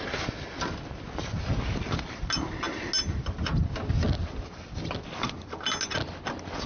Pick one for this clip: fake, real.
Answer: real